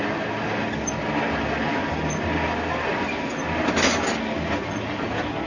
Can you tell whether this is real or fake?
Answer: real